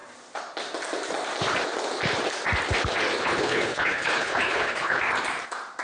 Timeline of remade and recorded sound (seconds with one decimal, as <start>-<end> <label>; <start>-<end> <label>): 0.0-3.2 recorded; 3.2-5.0 remade; 5.0-5.8 recorded